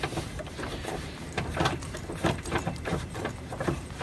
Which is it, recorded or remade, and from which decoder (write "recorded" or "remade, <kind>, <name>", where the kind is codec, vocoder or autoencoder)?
remade, vocoder, BigVGAN v2